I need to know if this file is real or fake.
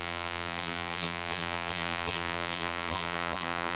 fake